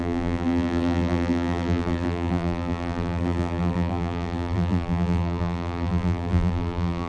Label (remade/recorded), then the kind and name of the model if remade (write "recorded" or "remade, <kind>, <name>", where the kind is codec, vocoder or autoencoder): remade, vocoder, BigVGAN v2